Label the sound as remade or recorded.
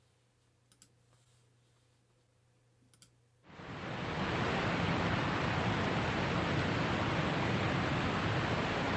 recorded